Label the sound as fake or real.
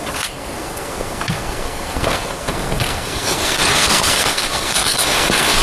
fake